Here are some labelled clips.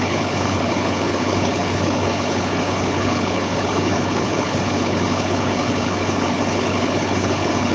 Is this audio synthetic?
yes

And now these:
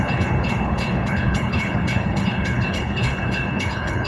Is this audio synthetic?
yes